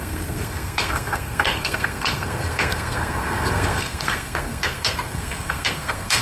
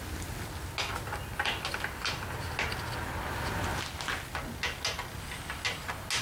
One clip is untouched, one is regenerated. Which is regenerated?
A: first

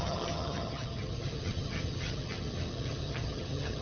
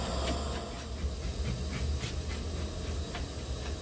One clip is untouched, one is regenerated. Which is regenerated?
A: first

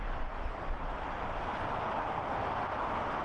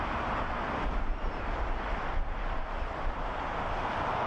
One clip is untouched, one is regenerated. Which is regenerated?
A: first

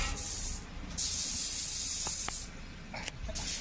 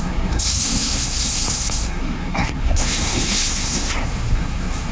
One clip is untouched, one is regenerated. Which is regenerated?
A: second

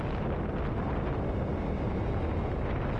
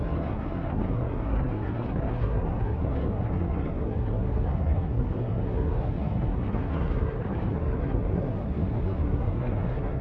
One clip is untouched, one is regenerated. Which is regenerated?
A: second